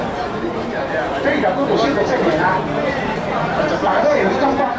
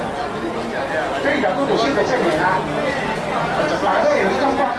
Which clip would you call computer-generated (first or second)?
first